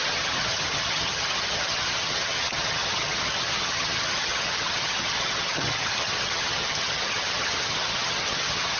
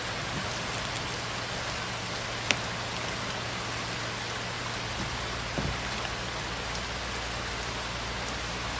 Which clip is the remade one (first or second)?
first